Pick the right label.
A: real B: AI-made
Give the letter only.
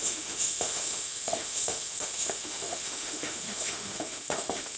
B